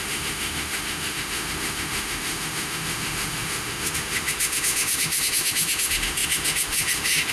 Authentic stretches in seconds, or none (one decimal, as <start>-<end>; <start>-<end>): none